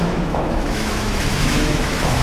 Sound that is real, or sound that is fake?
fake